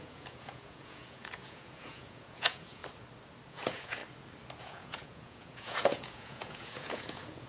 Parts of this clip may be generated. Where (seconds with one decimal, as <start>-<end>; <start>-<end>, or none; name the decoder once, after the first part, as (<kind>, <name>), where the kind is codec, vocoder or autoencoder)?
0.0-2.8 (vocoder, Vocos); 3.5-4.0; 4.6-7.5

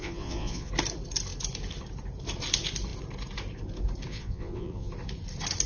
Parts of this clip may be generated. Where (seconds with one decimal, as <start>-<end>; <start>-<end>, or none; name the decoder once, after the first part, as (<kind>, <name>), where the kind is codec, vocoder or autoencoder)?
0.0-0.7 (vocoder, Vocos); 4.1-4.9

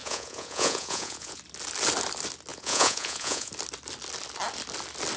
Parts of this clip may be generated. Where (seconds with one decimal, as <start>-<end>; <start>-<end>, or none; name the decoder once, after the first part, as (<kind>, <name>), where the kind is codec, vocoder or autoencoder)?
0.0-1.4 (vocoder, Vocos); 2.5-3.5

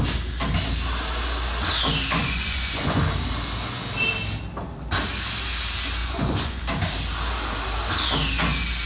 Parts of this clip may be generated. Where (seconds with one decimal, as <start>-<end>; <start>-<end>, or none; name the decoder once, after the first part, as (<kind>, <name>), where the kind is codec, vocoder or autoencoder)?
2.2-3.0 (vocoder, Vocos); 6.0-6.6